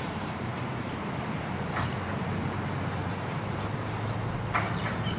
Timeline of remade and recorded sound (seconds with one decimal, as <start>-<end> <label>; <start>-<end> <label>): 0.0-0.5 recorded; 0.5-1.5 remade; 1.5-5.2 recorded